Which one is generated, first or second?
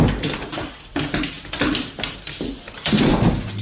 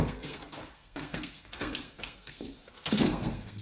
second